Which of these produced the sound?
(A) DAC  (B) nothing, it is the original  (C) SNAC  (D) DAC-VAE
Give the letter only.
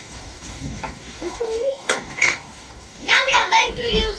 A